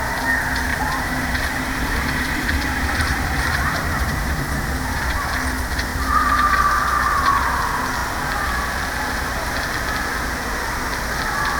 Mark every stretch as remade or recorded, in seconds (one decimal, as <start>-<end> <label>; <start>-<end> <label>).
0.0-0.7 recorded; 0.7-4.4 remade; 4.4-5.9 recorded; 5.9-6.5 remade; 6.5-11.6 recorded